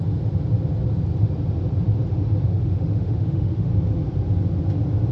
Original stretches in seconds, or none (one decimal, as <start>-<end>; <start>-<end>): 0.0-2.4; 3.7-5.1